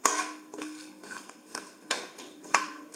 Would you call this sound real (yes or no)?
no